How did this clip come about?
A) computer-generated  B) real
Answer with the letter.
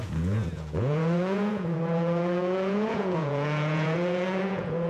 A